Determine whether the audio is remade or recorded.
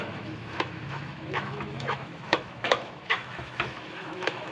remade